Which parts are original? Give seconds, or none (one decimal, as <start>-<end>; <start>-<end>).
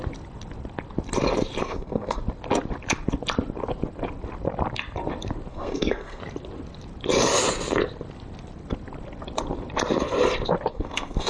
0.0-1.6; 2.2-5.5; 6.2-10.7